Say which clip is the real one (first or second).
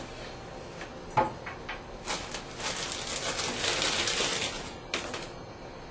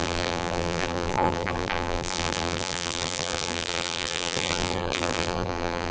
first